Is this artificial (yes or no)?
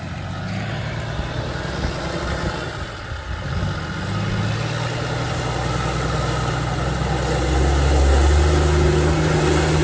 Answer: no